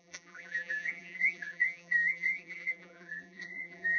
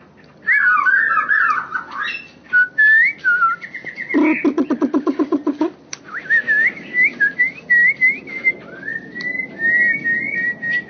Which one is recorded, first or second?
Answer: second